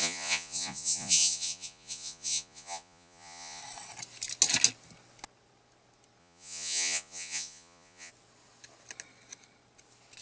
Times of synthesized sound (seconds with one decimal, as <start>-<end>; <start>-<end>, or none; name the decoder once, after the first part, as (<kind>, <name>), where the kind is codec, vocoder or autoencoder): 0.0-3.6 (vocoder, Vocos); 6.2-8.1